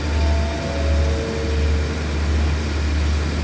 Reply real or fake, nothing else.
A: real